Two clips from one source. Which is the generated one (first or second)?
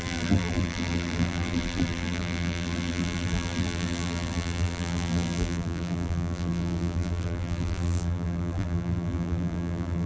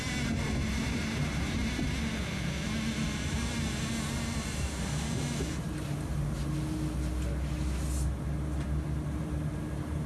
first